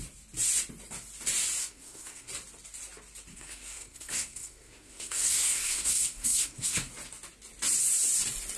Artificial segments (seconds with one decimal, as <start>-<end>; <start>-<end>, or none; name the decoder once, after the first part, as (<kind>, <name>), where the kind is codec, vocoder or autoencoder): 1.6-2.3 (codec, SNAC); 3.3-6.9